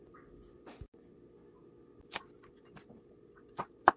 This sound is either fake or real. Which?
real